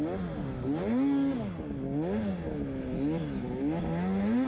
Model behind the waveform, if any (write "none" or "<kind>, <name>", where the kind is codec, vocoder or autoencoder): none